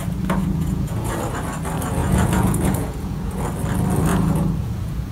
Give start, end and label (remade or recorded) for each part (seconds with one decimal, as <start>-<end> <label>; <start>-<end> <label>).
0.0-0.4 recorded; 0.4-1.2 remade; 1.2-2.0 recorded; 2.0-3.4 remade; 3.4-4.1 recorded; 4.1-5.1 remade